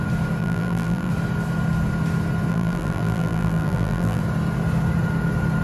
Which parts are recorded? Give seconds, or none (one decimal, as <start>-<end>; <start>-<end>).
0.0-0.4; 1.1-2.5; 4.2-5.6